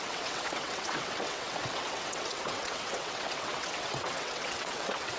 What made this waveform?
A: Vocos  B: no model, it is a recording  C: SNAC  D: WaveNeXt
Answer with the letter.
D